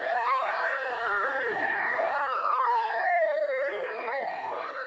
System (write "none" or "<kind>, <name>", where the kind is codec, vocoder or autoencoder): codec, SNAC